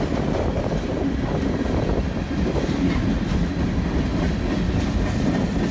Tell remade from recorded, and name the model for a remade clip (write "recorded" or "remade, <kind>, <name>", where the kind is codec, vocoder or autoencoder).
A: recorded